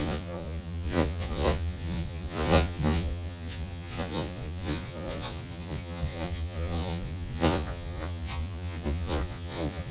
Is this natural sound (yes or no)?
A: no